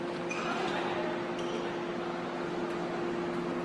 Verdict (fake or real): real